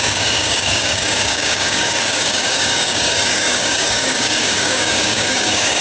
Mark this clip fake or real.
fake